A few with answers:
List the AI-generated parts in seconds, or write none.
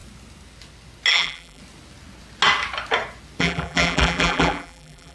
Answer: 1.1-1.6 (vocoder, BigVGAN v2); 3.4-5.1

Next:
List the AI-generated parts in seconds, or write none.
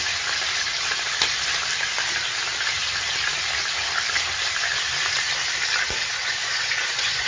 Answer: 6.1-7.3 (vocoder, Vocos)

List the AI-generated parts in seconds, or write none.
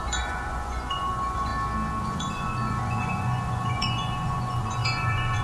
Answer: 0.0-1.5 (vocoder, Vocos); 2.0-5.4